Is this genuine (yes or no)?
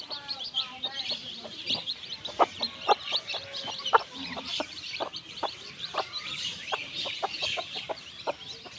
no